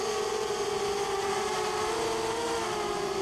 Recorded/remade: recorded